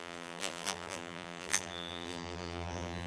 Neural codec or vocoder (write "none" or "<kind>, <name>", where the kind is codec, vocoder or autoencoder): vocoder, BigVGAN v2